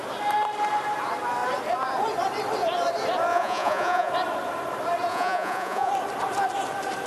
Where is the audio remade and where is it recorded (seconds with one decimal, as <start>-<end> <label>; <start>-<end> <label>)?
0.0-3.3 recorded; 3.3-4.1 remade; 4.1-5.1 recorded; 5.1-5.9 remade; 5.9-7.1 recorded